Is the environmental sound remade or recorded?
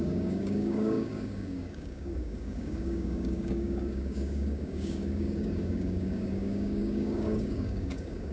remade